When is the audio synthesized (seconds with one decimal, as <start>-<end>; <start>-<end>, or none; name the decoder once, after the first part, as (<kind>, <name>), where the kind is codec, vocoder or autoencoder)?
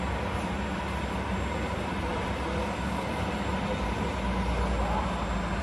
none